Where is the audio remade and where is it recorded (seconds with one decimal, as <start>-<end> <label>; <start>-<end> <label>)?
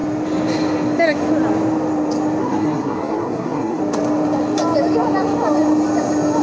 0.0-2.4 recorded; 2.4-3.8 remade; 3.8-6.4 recorded